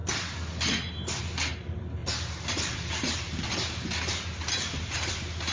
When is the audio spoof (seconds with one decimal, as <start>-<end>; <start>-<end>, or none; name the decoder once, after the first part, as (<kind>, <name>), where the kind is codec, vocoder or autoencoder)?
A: 2.0-5.1 (vocoder, BigVGAN v2)